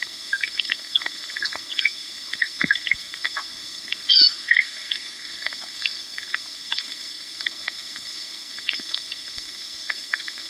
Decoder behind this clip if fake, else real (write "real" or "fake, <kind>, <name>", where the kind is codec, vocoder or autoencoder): fake, codec, SNAC